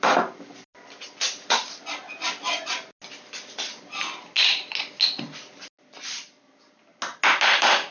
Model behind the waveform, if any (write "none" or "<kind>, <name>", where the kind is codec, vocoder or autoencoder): none